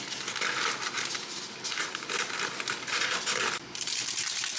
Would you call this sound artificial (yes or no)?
no